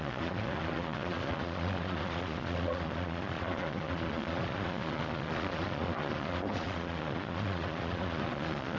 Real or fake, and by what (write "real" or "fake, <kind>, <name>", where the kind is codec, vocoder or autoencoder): fake, vocoder, Vocos